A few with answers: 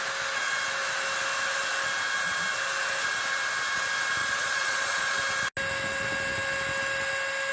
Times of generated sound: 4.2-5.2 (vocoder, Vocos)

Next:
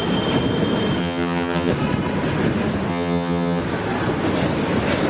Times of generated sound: 1.0-1.7 (vocoder, HiFi-GAN); 2.9-3.6

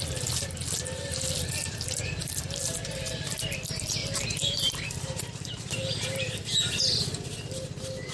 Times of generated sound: 2.2-3.3 (vocoder, BigVGAN v2); 4.0-6.7

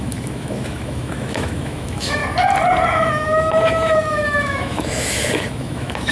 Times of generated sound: 0.0-2.2 (autoencoder, DAC-VAE); 2.9-6.1

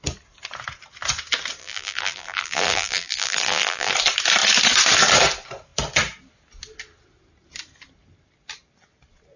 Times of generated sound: 1.6-3.9 (vocoder, BigVGAN v2)

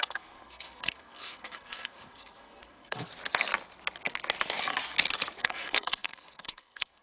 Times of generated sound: 0.0-3.1 (codec, SNAC); 5.4-7.0

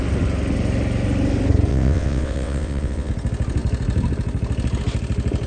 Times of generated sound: 1.7-3.1 (vocoder, WaveNeXt)

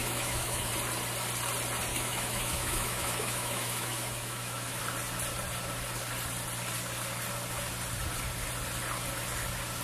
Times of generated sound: 0.0-0.7 (autoencoder, DAC-VAE); 1.9-4.8